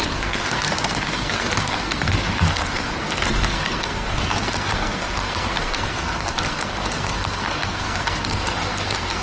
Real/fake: fake